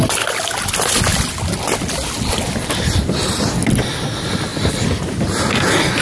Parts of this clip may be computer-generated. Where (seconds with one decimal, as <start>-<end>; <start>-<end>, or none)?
none